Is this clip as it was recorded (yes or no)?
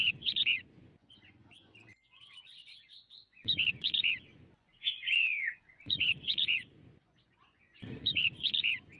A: no